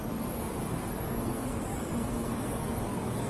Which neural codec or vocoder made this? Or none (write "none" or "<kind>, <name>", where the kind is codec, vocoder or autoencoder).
codec, SNAC